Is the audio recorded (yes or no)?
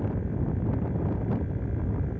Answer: yes